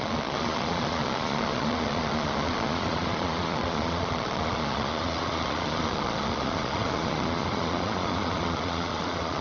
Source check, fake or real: fake